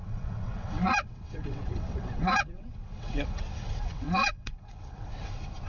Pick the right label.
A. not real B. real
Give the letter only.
A